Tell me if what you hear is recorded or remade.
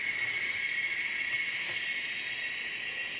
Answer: recorded